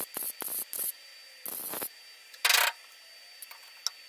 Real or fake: real